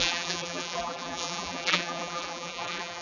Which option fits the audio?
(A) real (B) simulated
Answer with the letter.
B